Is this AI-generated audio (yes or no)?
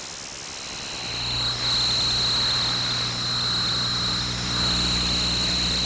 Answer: no